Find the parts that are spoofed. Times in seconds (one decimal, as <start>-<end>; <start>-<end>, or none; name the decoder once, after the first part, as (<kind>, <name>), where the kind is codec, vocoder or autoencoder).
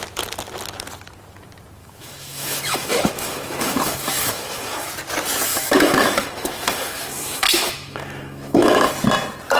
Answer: 1.8-4.9 (autoencoder, DAC-VAE); 5.5-8.9